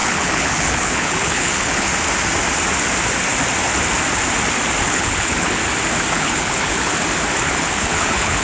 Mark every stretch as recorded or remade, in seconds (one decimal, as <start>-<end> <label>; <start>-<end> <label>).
0.0-1.9 remade; 1.9-4.8 recorded; 4.8-5.6 remade; 5.6-6.1 recorded; 6.1-6.9 remade; 6.9-7.4 recorded; 7.4-8.4 remade